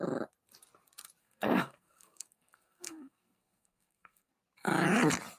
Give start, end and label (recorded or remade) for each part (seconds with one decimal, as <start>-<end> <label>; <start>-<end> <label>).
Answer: 0.0-1.2 recorded; 1.2-4.3 remade; 4.3-5.4 recorded